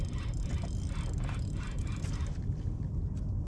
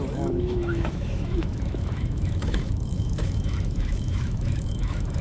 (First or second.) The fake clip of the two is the second